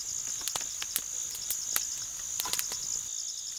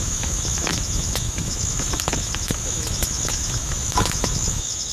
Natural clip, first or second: first